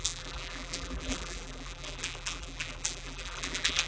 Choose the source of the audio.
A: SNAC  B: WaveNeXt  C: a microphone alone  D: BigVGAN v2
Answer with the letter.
D